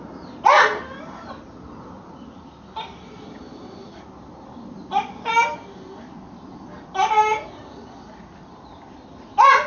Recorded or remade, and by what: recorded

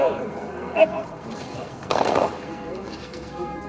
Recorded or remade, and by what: remade, codec, SNAC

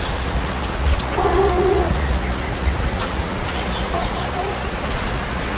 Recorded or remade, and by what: remade, vocoder, Vocos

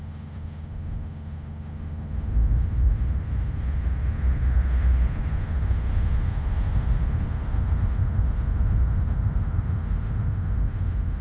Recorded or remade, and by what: remade, autoencoder, DAC-VAE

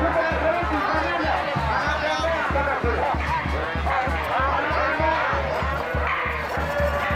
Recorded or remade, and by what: recorded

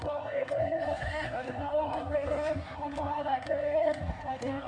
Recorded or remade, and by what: remade, codec, SNAC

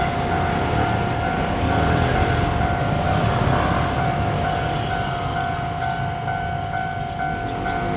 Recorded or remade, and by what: recorded